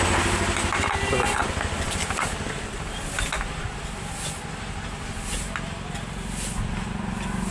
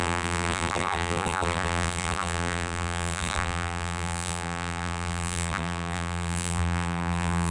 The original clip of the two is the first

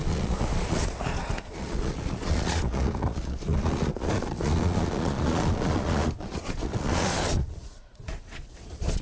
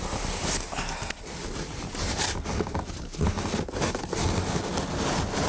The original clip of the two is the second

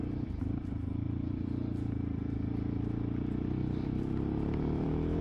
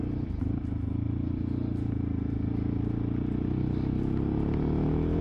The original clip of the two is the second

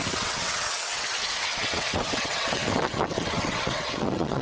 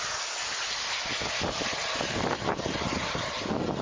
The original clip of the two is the second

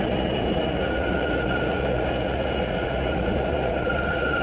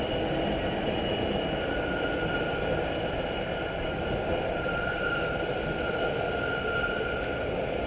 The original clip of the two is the second